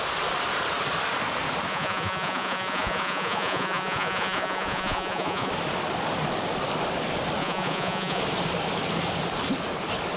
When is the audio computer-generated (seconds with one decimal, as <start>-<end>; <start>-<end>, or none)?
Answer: 1.7-5.5; 7.4-8.2